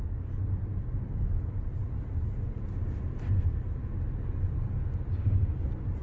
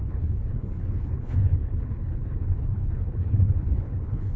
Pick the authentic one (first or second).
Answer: first